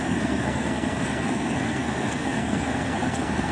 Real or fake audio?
fake